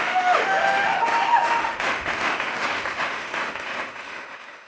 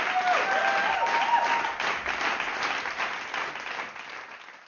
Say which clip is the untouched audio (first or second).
second